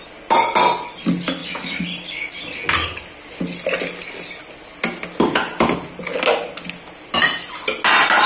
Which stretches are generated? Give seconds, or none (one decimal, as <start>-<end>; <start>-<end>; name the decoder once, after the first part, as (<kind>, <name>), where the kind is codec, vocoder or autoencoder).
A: none